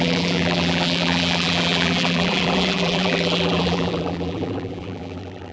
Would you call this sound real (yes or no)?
no